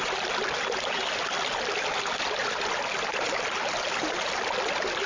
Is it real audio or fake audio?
real